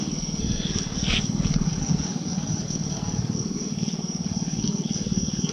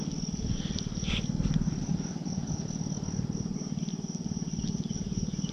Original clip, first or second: second